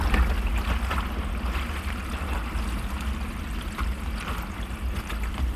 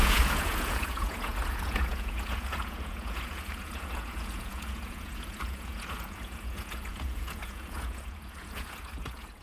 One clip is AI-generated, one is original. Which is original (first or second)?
first